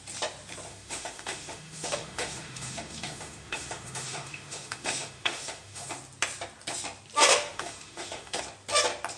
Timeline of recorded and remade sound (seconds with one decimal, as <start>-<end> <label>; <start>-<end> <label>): 0.0-0.7 recorded; 0.7-5.9 remade; 5.9-7.3 recorded; 7.3-8.4 remade; 8.4-9.2 recorded